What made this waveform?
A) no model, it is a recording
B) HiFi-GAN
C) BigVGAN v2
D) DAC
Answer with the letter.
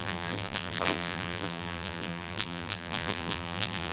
C